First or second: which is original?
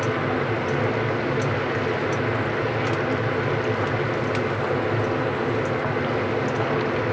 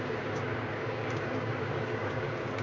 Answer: first